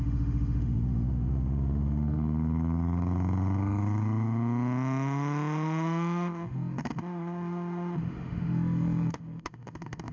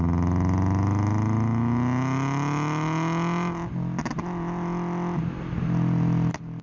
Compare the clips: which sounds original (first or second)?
second